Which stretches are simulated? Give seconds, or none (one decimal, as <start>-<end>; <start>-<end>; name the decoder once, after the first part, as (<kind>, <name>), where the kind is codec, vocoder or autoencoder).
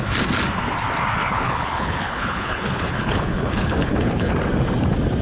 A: 1.2-4.3 (codec, HILCodec)